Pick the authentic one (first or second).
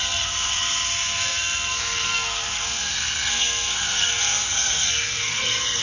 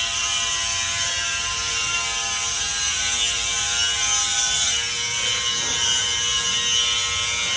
second